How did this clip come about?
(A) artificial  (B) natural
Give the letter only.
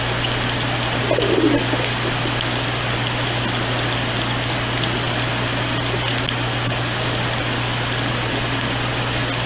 B